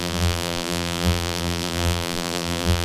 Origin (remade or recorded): remade